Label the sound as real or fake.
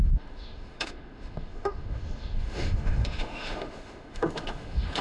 fake